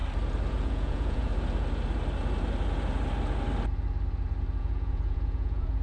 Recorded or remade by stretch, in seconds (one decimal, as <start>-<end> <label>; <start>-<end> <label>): 0.0-0.5 recorded; 0.5-1.3 remade; 1.3-4.6 recorded; 4.6-5.8 remade